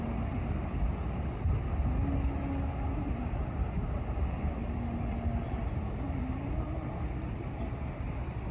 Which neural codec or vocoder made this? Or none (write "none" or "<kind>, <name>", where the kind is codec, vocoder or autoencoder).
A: none